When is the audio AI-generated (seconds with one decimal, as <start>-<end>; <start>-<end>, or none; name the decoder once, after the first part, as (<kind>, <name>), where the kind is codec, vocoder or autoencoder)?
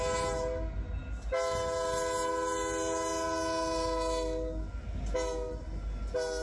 none